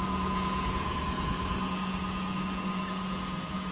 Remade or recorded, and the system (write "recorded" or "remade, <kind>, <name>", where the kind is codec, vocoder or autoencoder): remade, vocoder, Vocos